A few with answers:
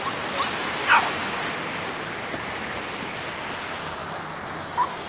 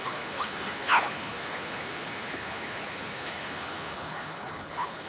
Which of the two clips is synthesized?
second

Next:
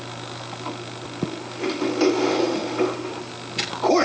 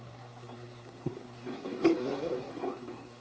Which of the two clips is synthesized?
second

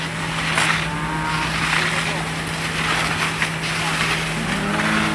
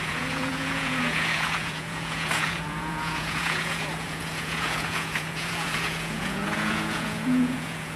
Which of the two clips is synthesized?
second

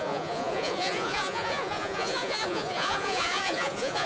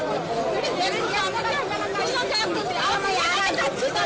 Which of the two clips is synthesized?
first